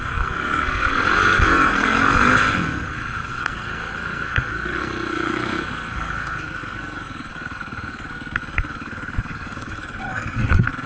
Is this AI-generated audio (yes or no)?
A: yes